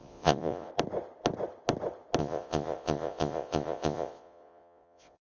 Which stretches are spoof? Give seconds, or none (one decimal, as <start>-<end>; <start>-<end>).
0.0-0.7; 2.2-5.2